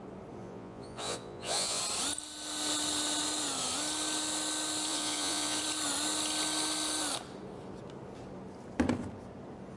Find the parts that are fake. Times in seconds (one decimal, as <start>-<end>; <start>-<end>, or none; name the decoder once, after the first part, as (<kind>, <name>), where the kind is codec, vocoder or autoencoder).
0.4-1.8 (vocoder, Vocos); 4.9-5.6